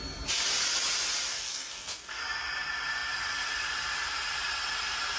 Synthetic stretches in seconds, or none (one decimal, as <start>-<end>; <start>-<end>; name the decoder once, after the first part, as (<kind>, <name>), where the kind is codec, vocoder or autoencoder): 1.3-2.2 (codec, DAC)